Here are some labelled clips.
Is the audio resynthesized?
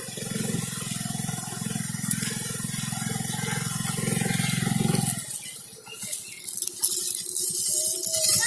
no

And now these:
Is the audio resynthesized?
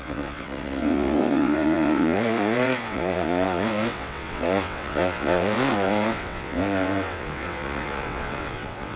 yes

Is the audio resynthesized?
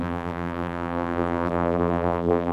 yes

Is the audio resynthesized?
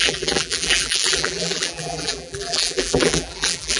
yes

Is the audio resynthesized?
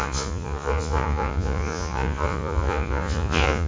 yes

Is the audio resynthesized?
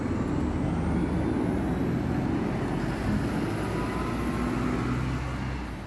no